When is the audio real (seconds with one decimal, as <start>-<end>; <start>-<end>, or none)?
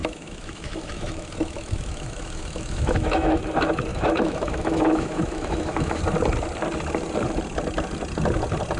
3.4-3.9; 6.0-8.8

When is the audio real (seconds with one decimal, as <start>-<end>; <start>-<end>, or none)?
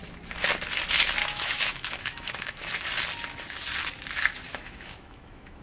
0.0-1.2; 2.7-4.5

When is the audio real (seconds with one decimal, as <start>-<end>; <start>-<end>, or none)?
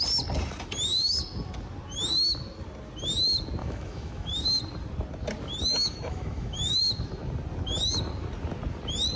0.0-3.6; 4.3-5.7; 6.8-9.2